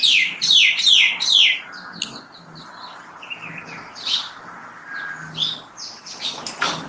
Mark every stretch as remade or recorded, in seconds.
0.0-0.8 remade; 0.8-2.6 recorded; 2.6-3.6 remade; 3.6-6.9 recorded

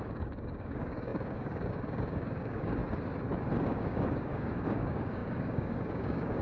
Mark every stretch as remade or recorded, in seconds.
0.0-2.8 remade; 2.8-3.6 recorded; 3.6-6.4 remade

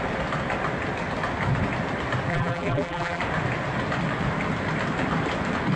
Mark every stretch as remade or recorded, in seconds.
0.0-2.3 recorded; 2.3-3.2 remade; 3.2-5.8 recorded

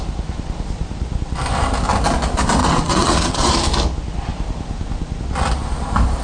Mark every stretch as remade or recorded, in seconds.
0.0-2.6 recorded; 2.6-3.5 remade; 3.5-6.2 recorded